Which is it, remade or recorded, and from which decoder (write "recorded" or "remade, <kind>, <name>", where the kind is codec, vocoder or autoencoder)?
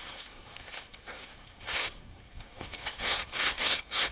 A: remade, codec, SNAC